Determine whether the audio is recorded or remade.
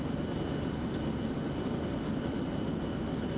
recorded